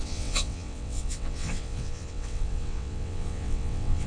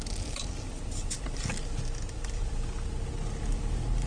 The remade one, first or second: first